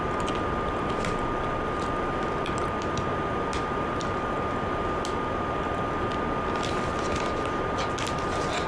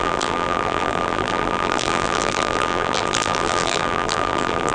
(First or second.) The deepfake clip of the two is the second